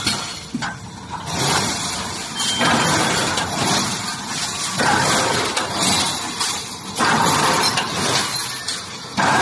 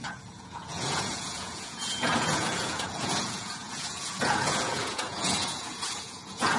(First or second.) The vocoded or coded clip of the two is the second